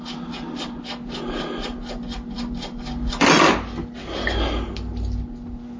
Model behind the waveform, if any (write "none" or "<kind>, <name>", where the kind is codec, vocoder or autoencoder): none